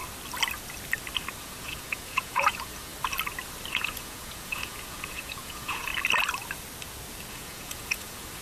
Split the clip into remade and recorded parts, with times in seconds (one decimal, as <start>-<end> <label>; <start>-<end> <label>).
0.0-1.4 recorded; 1.4-2.9 remade; 2.9-3.7 recorded; 3.7-5.9 remade; 5.9-7.3 recorded; 7.3-8.4 remade